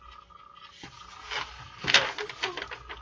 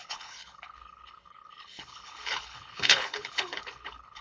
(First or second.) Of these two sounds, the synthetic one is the second